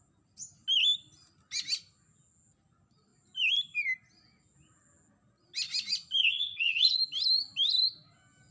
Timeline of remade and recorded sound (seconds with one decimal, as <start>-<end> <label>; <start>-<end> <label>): 0.0-6.2 recorded; 6.2-7.0 remade; 7.0-8.5 recorded